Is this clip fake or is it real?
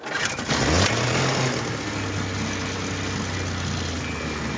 real